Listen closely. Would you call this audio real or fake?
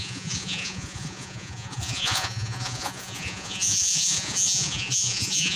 fake